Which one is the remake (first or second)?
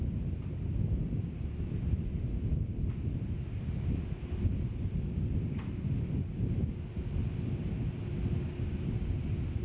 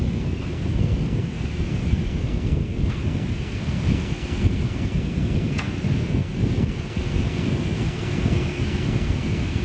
second